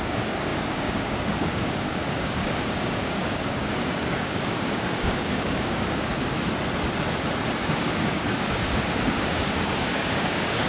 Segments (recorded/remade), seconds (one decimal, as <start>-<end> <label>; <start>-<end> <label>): 0.0-6.1 remade; 6.1-7.6 recorded; 7.6-10.7 remade